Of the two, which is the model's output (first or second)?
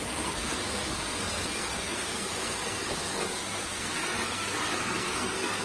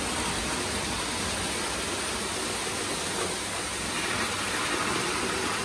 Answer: first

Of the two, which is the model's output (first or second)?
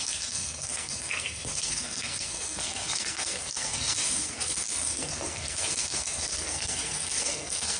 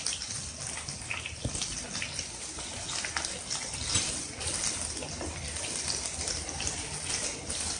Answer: first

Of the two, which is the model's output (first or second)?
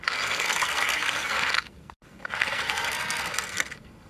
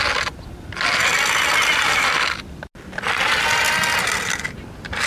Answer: first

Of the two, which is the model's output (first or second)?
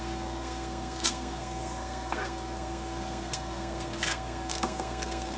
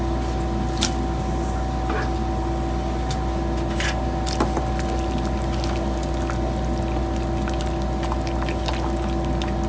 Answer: first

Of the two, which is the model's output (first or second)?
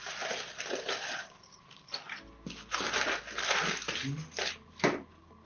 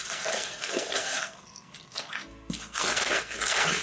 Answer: second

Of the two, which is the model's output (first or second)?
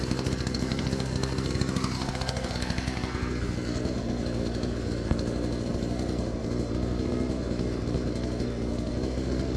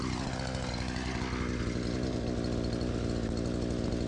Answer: first